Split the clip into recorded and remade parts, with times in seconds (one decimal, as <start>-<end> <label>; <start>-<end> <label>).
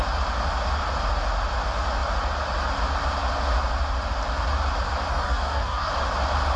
0.0-5.1 recorded; 5.1-5.9 remade; 5.9-6.6 recorded